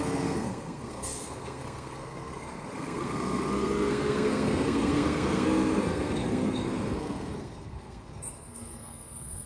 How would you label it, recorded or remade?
remade